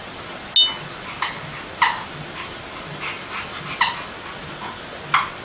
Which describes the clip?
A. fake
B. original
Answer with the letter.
B